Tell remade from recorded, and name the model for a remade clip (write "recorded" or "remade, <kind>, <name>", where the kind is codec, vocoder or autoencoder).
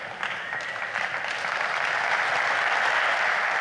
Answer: recorded